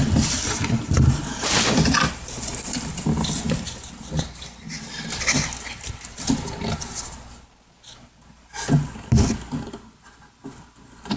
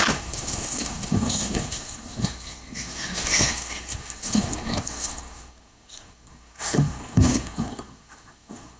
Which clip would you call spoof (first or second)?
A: second